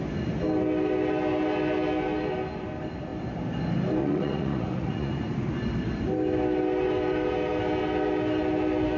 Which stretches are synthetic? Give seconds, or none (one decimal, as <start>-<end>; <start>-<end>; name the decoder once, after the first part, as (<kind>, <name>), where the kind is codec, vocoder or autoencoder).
4.0-5.1 (vocoder, Vocos)